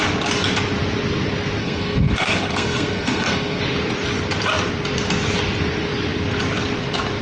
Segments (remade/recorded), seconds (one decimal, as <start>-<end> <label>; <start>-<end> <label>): 0.0-1.6 recorded; 1.6-3.6 remade; 3.6-7.2 recorded